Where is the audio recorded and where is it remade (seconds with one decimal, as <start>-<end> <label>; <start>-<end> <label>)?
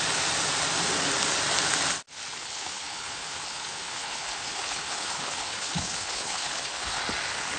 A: 0.0-2.4 recorded; 2.4-7.0 remade; 7.0-7.6 recorded